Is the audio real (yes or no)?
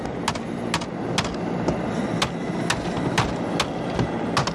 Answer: yes